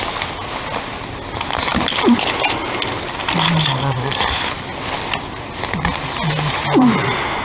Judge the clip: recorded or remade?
recorded